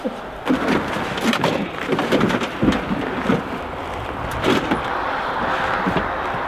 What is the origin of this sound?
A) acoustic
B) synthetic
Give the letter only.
B